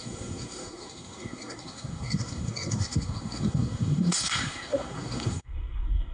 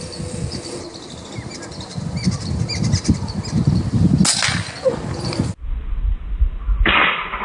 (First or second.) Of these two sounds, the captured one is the second